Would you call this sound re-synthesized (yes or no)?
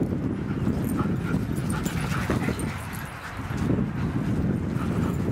no